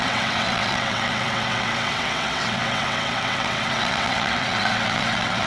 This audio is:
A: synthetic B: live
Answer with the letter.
A